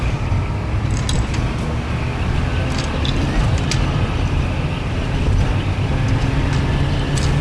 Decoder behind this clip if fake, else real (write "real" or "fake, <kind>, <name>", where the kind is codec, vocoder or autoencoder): real